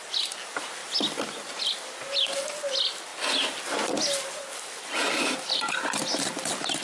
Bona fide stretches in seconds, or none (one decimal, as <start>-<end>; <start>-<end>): 0.0-6.8